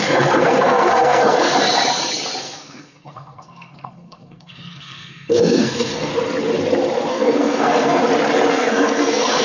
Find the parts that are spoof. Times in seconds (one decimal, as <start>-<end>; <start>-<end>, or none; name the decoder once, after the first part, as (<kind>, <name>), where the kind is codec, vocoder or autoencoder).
0.0-1.5 (codec, SNAC); 2.4-6.1; 7.1-8.0; 8.5-9.4